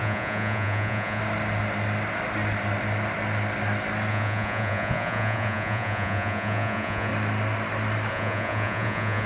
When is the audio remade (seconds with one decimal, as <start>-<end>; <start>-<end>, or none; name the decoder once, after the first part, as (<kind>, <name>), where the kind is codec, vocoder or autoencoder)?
0.0-1.2 (vocoder, Vocos); 4.1-7.1; 8.1-9.3